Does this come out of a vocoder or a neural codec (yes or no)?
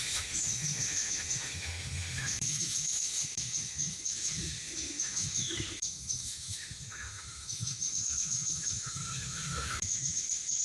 yes